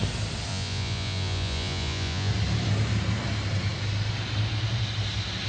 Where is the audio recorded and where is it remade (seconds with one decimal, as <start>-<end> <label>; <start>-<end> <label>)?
0.0-0.5 recorded; 0.5-2.3 remade; 2.3-5.5 recorded